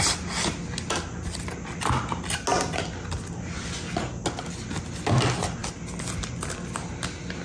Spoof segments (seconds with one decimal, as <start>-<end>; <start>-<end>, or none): none